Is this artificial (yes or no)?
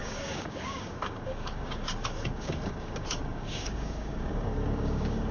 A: yes